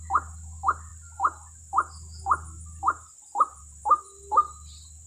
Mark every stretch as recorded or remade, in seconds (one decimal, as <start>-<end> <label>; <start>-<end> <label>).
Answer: 0.0-5.1 recorded